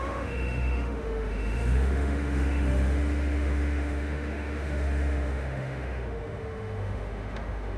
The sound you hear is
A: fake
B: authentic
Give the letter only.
A